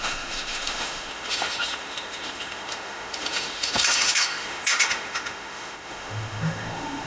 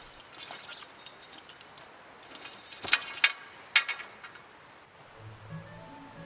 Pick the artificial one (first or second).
first